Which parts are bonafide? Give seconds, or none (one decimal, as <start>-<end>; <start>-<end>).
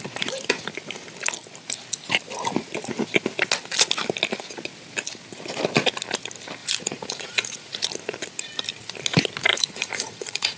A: 0.0-6.6; 7.8-9.5